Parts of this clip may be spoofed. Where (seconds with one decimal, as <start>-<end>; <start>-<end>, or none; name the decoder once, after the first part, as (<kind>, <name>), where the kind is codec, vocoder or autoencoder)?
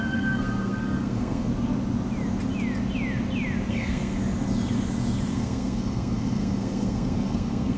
0.0-1.5 (codec, SNAC); 3.7-4.2; 5.3-7.8